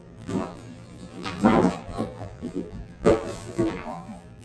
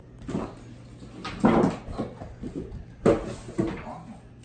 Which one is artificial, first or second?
first